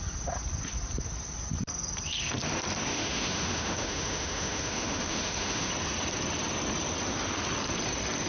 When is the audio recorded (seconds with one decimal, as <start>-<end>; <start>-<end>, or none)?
0.0-2.9; 5.7-8.3